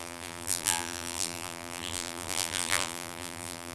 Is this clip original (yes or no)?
no